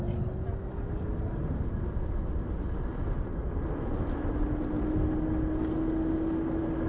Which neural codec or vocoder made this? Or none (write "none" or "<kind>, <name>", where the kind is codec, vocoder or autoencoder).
none